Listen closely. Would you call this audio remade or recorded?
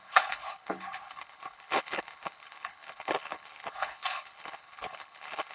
remade